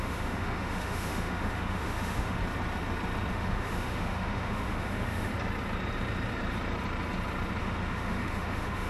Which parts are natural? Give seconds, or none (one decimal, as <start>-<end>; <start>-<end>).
2.4-3.3; 5.3-7.6